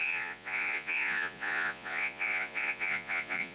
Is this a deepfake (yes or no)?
yes